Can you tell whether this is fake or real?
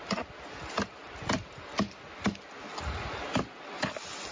real